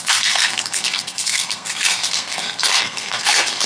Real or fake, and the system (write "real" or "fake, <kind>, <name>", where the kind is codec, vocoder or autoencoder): fake, codec, SNAC